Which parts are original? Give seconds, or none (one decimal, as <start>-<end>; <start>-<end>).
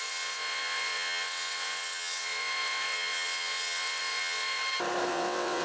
4.6-5.1